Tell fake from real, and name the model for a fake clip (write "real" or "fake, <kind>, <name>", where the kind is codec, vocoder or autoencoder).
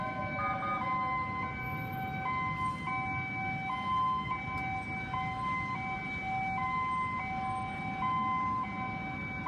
real